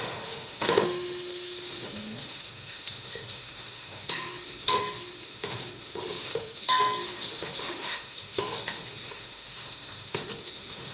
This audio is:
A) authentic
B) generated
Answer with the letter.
B